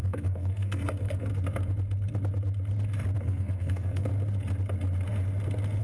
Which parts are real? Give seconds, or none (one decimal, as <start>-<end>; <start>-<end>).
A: 1.3-3.2; 4.1-5.8